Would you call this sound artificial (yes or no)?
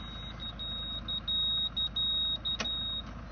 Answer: no